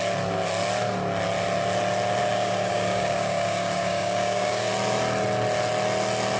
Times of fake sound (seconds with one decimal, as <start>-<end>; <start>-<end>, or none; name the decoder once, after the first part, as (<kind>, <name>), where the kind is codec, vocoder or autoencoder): 2.2-4.7 (codec, DAC)